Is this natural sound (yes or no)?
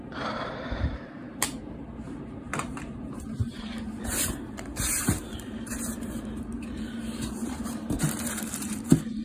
no